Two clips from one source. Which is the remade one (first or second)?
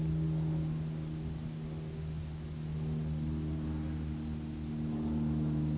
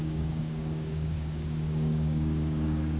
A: second